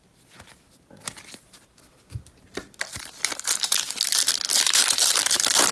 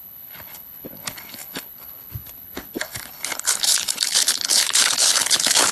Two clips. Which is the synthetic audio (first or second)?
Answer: second